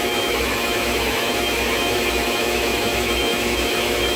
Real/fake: fake